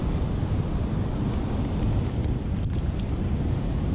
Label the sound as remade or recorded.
recorded